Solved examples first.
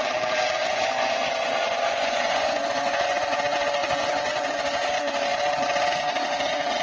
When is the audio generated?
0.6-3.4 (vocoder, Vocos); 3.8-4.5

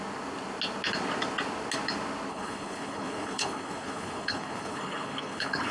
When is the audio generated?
2.3-5.7 (codec, HILCodec)

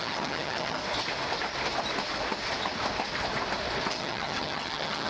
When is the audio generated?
0.0-0.8 (vocoder, HiFi-GAN); 3.9-5.1

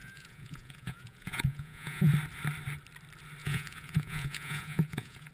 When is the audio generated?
0.0-2.1 (vocoder, Vocos); 3.4-5.3

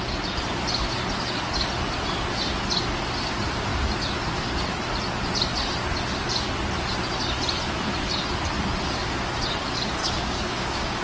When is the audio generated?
10.0-11.0 (codec, DAC)

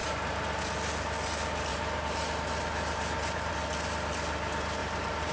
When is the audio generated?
0.0-0.6 (vocoder, BigVGAN v2); 1.7-3.5; 4.8-5.3